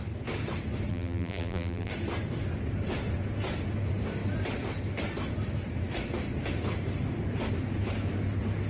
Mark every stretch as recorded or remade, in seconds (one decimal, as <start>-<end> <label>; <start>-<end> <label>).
0.0-0.9 recorded; 0.9-1.9 remade; 1.9-8.7 recorded